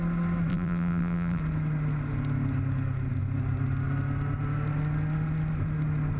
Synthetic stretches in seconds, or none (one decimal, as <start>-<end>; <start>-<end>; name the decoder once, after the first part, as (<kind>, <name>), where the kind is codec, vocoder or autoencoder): 0.5-1.4 (vocoder, BigVGAN v2)